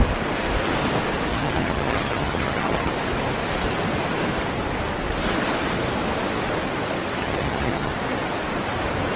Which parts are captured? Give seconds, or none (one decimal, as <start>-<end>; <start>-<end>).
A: 0.0-1.3; 2.9-7.2; 7.9-9.2